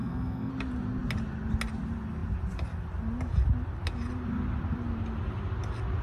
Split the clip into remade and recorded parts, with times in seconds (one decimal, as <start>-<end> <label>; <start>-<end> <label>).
0.0-0.5 remade; 0.5-6.0 recorded